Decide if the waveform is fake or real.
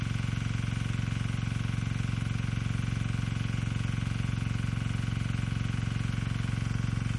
real